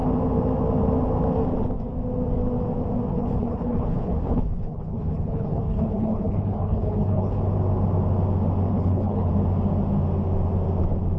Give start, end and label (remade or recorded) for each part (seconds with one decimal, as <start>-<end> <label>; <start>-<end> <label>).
0.0-3.1 recorded; 3.1-7.4 remade; 7.4-8.7 recorded; 8.7-9.3 remade; 9.3-11.2 recorded